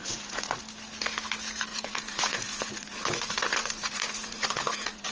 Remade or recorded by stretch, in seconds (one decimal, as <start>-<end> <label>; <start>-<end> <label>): 0.0-0.6 remade; 0.6-1.7 recorded; 1.7-5.1 remade